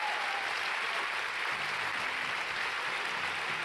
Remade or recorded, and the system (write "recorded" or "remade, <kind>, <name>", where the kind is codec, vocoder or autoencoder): recorded